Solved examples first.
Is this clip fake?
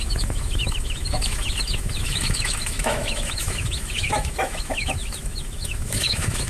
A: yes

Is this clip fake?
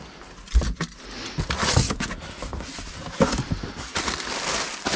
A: no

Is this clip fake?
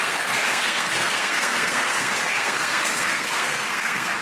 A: yes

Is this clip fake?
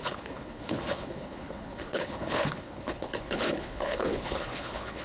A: yes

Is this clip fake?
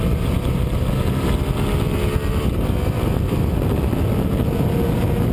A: no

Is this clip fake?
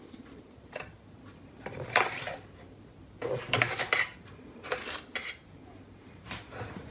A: yes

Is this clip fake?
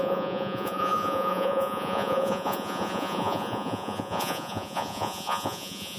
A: yes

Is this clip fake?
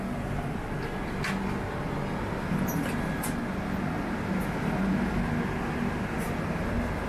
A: no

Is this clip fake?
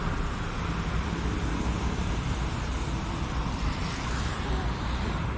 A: no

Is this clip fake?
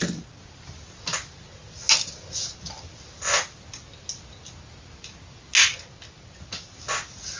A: no